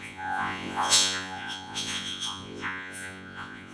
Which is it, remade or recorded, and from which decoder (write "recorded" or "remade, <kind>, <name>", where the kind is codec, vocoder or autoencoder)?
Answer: remade, vocoder, Vocos